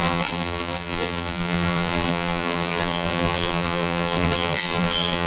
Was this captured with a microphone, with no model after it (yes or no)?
no